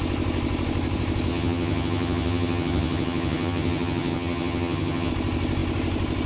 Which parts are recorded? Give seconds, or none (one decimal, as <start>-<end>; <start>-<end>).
0.0-1.3; 5.1-6.3